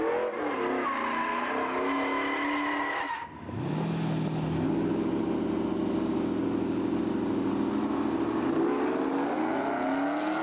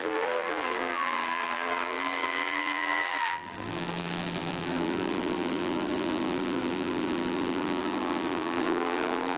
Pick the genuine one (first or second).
first